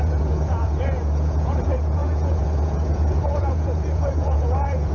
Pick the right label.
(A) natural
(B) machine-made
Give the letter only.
B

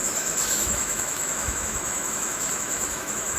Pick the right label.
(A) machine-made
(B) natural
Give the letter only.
A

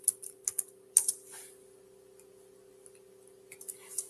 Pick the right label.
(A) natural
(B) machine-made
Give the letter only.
A